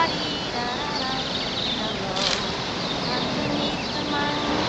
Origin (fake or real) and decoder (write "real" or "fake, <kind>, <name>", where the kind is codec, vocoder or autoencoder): real